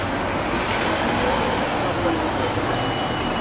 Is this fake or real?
real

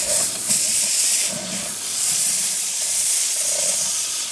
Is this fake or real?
fake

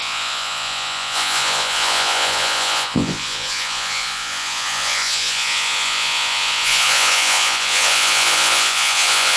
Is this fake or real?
fake